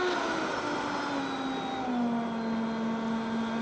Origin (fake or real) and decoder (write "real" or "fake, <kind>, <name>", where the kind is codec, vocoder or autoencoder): real